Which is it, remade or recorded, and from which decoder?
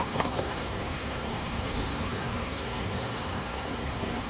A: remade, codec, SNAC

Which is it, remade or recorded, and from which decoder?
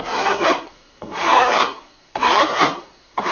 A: remade, codec, SNAC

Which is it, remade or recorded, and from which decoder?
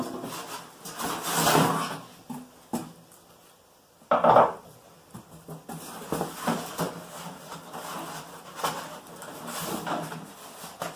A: recorded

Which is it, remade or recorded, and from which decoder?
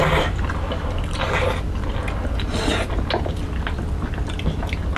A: recorded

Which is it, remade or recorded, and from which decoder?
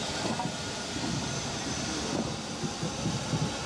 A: recorded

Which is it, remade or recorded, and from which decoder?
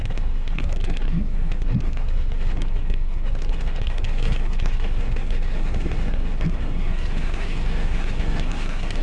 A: remade, codec, SNAC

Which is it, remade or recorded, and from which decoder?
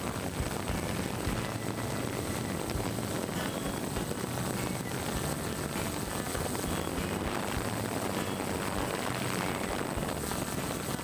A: recorded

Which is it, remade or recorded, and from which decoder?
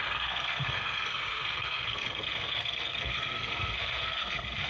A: remade, codec, SNAC